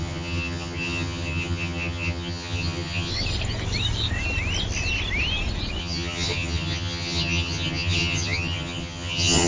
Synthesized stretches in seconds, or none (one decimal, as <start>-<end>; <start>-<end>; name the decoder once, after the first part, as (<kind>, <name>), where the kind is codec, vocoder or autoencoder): 0.0-3.1 (vocoder, HiFi-GAN); 5.8-9.5